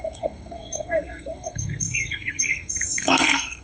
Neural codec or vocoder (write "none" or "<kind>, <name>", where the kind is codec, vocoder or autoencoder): codec, SNAC